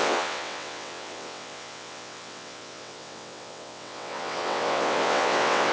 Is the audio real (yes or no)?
no